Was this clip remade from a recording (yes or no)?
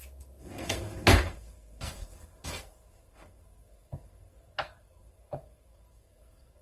yes